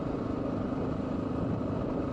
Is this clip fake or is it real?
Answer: real